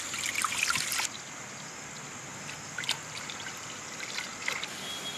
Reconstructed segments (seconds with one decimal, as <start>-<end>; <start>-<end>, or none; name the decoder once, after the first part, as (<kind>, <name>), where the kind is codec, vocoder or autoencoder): 2.3-3.9 (vocoder, BigVGAN v2)